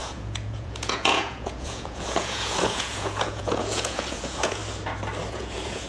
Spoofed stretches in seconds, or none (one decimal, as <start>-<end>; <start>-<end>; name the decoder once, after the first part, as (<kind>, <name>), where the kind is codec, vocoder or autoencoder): 0.0-4.6 (vocoder, Vocos); 5.3-5.9